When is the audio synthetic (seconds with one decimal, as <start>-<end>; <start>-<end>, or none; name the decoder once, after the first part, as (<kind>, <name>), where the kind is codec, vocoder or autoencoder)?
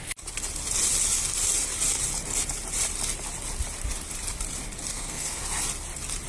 4.9-5.4 (codec, SNAC)